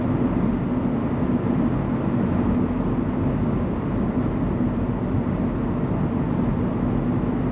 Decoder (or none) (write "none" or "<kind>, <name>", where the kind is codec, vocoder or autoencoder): none